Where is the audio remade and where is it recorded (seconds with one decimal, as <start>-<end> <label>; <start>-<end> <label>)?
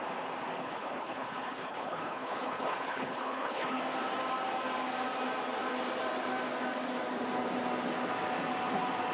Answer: 0.0-0.6 recorded; 0.6-3.8 remade; 3.8-9.1 recorded